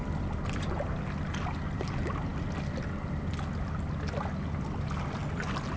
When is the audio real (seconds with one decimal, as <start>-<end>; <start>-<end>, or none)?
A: 0.0-5.8

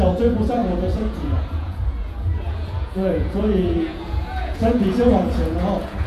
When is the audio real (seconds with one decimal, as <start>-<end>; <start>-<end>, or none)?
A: none

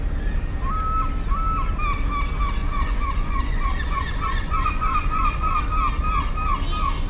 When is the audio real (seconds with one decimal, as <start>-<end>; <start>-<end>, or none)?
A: 0.0-2.6; 5.6-7.1

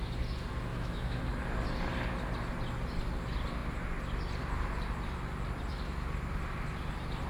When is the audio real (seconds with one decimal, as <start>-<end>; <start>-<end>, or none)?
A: 0.0-0.7; 1.2-7.3

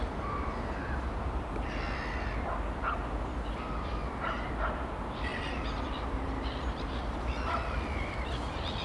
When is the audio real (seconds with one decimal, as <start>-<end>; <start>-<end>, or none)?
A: 0.0-8.8

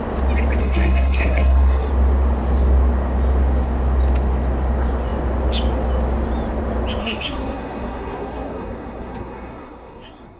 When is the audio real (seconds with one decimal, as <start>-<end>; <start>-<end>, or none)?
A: 0.0-0.6; 1.9-7.0

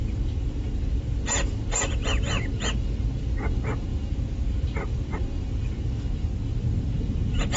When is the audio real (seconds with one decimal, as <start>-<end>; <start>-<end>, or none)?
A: 0.0-3.9; 5.7-7.6

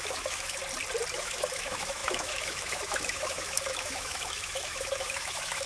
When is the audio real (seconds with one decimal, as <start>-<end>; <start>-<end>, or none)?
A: 0.6-1.1